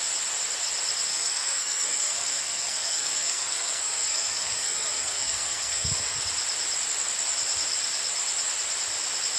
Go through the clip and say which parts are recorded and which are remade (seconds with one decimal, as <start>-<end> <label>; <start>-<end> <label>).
0.0-1.1 recorded; 1.1-6.2 remade; 6.2-9.4 recorded